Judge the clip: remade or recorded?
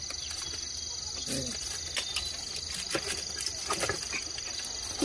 recorded